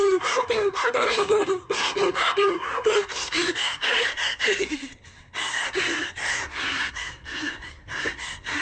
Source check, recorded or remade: remade